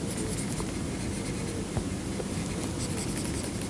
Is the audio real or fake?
real